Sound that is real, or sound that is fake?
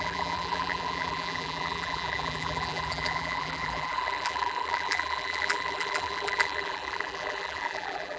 fake